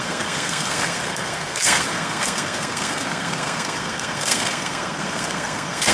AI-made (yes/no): yes